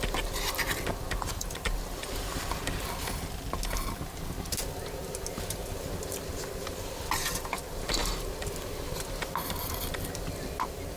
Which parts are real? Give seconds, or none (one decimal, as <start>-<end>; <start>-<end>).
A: 0.0-11.0